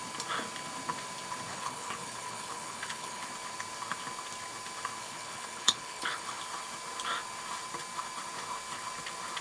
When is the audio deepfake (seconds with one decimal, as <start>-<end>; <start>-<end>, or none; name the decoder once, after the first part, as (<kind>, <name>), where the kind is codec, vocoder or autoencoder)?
1.5-3.3 (codec, HILCodec); 5.0-6.4